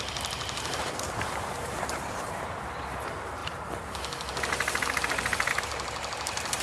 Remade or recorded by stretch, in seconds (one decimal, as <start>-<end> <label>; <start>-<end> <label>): 0.0-3.4 remade; 3.4-5.5 recorded; 5.5-6.6 remade